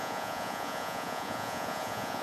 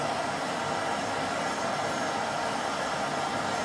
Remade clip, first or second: first